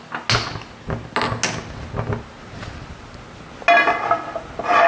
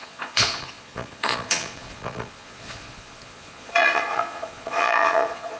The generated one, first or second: second